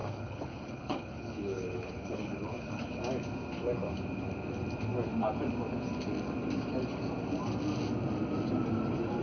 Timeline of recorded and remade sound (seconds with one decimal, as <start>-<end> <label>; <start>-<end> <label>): 0.0-3.0 remade; 3.0-9.2 recorded